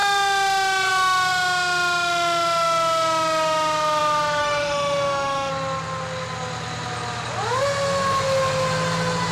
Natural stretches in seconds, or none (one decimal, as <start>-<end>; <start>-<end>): 0.0-4.4; 5.5-9.3